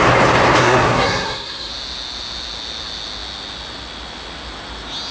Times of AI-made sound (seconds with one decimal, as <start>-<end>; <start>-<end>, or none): 0.6-1.7